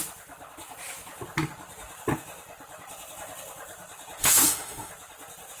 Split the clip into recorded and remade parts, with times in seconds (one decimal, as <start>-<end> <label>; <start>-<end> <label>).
0.0-4.2 recorded; 4.2-4.9 remade; 4.9-5.6 recorded